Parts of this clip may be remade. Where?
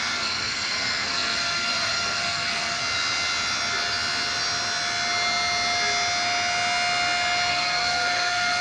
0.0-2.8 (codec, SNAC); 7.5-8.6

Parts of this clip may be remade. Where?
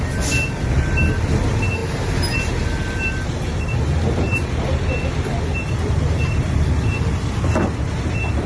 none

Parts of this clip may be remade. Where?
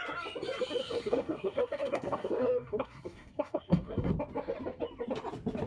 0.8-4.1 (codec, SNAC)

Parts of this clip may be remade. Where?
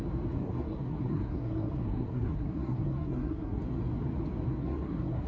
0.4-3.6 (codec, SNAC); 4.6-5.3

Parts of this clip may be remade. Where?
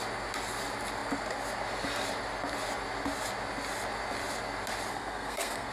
4.9-5.7 (codec, SNAC)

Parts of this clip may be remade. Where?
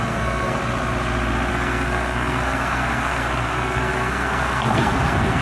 0.0-0.6 (codec, SNAC); 1.5-5.4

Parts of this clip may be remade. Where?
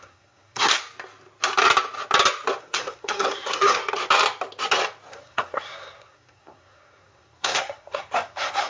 0.0-0.7 (codec, SNAC); 2.6-3.8; 5.1-8.7